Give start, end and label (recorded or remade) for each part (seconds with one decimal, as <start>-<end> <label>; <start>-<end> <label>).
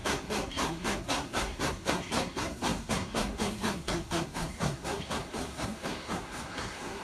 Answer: 0.0-7.0 remade